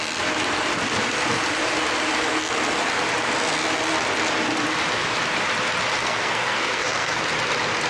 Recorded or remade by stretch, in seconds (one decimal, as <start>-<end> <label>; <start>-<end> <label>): 0.0-6.0 recorded; 6.0-7.2 remade; 7.2-7.9 recorded